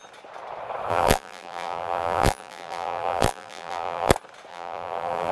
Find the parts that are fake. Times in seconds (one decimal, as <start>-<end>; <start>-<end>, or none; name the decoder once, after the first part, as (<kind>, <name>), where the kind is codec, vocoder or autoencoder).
0.9-4.1 (vocoder, BigVGAN v2); 4.5-5.3